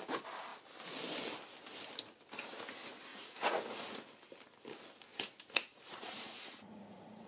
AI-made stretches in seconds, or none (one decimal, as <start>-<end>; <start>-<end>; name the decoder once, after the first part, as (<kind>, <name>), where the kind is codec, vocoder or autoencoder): 3.1-4.0 (vocoder, Vocos); 5.1-7.3